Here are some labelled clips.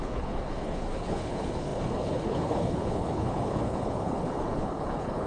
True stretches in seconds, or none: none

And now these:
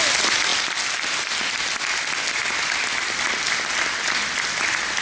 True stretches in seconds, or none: 0.0-5.0